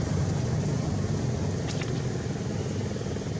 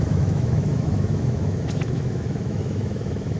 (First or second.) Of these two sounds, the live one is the first